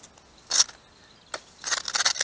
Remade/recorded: recorded